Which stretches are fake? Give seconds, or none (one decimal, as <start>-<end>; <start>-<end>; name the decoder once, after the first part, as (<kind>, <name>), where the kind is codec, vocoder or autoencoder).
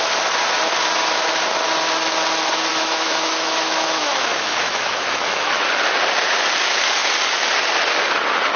2.7-5.6 (autoencoder, DAC-VAE)